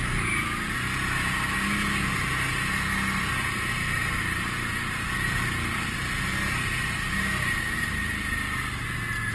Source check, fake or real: real